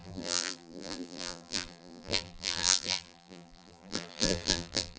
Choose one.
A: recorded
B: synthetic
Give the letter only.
B